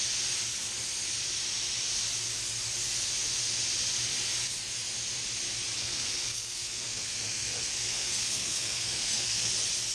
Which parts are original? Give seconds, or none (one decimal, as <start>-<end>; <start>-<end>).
0.0-5.8; 9.5-9.9